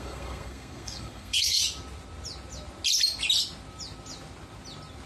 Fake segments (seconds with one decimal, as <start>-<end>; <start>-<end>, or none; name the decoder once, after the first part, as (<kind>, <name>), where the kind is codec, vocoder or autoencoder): 0.0-1.6 (codec, SNAC)